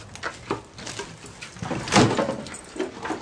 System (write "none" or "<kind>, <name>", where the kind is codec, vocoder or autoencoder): none